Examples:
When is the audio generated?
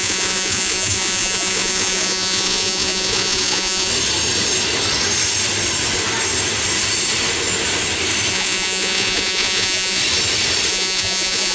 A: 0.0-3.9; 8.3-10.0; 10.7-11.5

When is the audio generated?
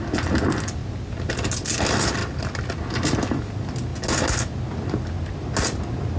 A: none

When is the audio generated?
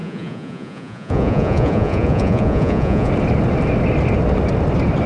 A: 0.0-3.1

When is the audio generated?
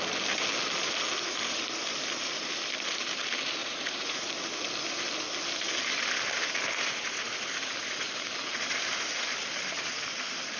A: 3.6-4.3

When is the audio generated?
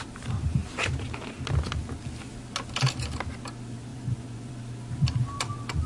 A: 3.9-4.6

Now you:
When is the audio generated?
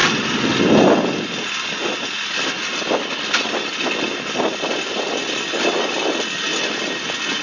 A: none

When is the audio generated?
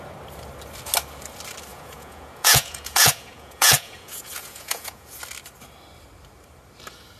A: 1.7-5.2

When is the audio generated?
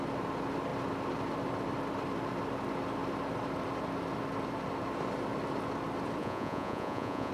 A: 6.2-7.3